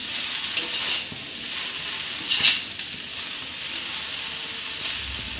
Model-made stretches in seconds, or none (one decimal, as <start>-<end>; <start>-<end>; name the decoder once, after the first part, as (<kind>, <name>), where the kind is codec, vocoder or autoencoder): none